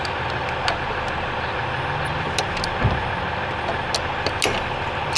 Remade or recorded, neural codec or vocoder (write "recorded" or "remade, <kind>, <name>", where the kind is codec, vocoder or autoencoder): recorded